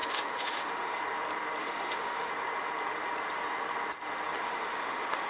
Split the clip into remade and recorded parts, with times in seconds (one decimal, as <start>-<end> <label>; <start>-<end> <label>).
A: 0.0-1.0 remade; 1.0-1.6 recorded; 1.6-2.3 remade; 2.3-4.4 recorded; 4.4-5.3 remade